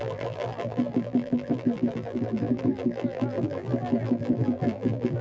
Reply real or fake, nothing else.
fake